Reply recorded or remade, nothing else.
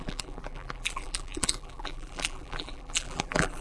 remade